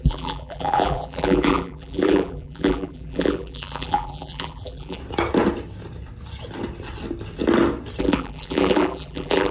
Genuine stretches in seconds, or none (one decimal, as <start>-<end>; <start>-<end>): 5.0-8.0